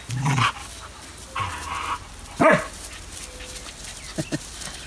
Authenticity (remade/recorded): recorded